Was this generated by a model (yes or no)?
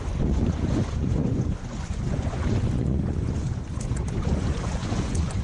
yes